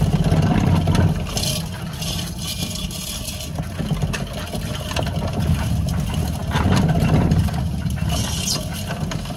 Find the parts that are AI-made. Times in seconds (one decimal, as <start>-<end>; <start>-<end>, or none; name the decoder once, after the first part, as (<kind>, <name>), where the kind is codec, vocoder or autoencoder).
none